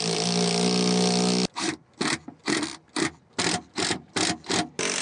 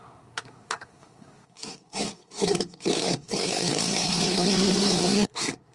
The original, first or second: first